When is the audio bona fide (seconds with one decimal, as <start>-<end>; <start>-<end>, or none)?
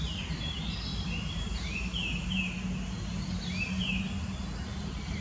0.0-0.9; 4.0-5.2